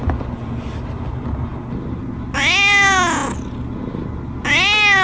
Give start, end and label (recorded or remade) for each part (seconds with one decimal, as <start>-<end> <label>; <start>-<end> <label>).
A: 0.0-5.0 recorded